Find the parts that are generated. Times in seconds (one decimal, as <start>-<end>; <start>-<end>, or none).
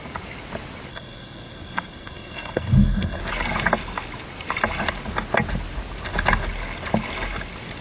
0.9-3.2